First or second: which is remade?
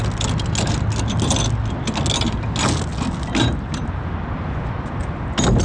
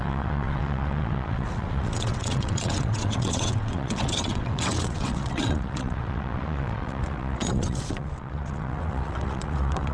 second